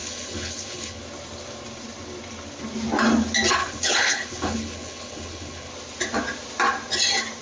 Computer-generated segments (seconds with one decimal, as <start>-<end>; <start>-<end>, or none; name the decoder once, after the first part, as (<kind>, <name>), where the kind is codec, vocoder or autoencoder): 0.0-1.0 (codec, HILCodec); 3.6-5.7